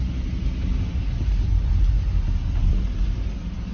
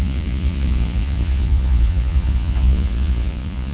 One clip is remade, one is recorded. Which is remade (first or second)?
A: second